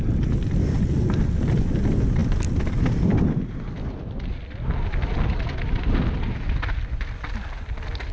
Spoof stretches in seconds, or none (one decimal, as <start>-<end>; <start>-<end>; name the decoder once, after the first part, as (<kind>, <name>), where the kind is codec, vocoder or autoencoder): none